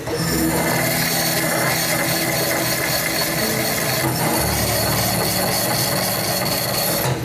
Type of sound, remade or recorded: recorded